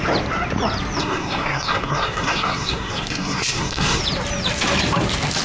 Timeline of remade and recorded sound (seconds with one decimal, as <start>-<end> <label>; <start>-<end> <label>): 0.0-1.0 recorded; 1.0-4.0 remade; 4.0-5.4 recorded